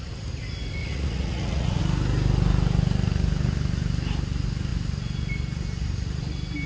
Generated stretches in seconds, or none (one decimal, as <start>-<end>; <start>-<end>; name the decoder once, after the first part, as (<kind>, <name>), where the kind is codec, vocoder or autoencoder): 0.8-1.8 (vocoder, Vocos)